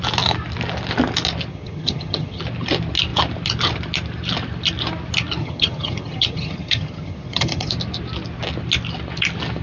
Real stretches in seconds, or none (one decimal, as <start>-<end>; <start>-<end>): 0.0-1.5; 2.4-5.4; 7.7-9.6